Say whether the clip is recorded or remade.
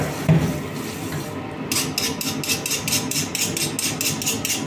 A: recorded